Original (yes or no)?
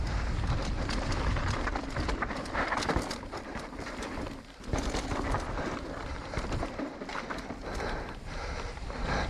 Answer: no